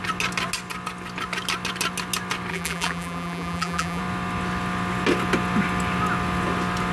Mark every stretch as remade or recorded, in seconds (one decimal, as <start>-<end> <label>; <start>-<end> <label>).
0.0-2.5 recorded; 2.5-4.0 remade; 4.0-6.9 recorded

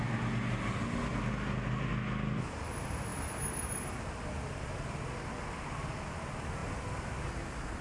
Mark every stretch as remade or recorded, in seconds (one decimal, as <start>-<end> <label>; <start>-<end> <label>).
0.0-7.8 recorded

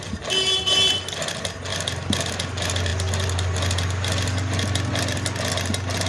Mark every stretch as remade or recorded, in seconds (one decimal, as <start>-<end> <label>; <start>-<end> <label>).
0.0-1.7 recorded; 1.7-2.3 remade; 2.3-6.1 recorded

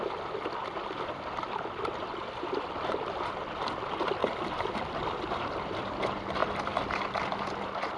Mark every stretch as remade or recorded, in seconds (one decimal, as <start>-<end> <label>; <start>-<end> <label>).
0.0-4.2 recorded; 4.2-5.0 remade; 5.0-8.0 recorded

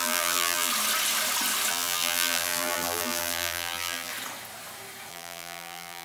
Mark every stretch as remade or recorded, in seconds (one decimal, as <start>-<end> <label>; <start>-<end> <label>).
0.0-0.7 remade; 0.7-1.7 recorded; 1.7-4.1 remade; 4.1-5.1 recorded; 5.1-6.0 remade

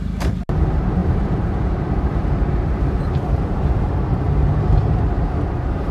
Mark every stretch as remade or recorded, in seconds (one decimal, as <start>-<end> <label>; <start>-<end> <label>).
0.0-1.0 recorded; 1.0-3.9 remade; 3.9-4.8 recorded; 4.8-5.4 remade; 5.4-5.9 recorded

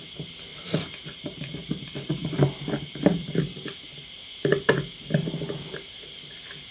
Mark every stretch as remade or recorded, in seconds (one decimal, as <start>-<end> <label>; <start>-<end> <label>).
0.0-0.5 recorded; 0.5-3.4 remade; 3.4-6.7 recorded